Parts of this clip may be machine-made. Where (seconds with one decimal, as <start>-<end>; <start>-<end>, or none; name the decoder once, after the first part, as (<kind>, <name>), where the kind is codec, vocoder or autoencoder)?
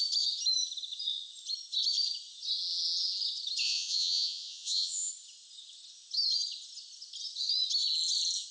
3.6-5.1 (vocoder, Vocos)